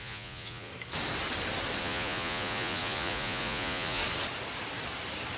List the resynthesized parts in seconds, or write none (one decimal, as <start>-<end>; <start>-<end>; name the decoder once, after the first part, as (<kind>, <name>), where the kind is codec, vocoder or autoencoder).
0.0-0.7 (vocoder, Vocos); 1.8-4.0